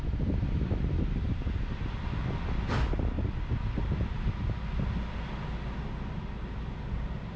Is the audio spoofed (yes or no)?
no